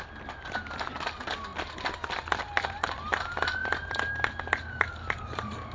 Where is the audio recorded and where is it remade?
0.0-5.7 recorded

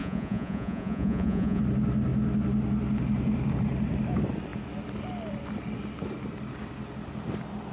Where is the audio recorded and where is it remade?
0.0-1.6 remade; 1.6-7.7 recorded

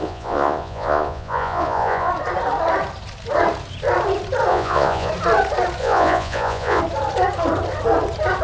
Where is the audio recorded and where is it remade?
0.0-2.1 remade; 2.1-4.5 recorded; 4.5-5.1 remade; 5.1-5.8 recorded; 5.8-6.8 remade; 6.8-8.4 recorded